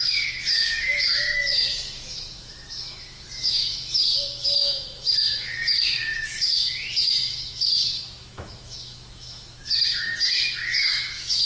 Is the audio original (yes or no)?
no